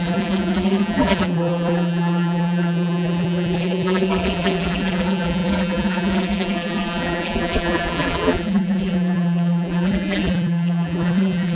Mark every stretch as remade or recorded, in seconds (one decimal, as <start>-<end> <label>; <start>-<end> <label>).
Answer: 0.0-11.6 remade